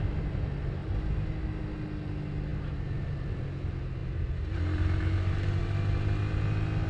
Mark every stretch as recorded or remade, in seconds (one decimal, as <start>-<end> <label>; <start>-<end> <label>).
0.0-6.9 recorded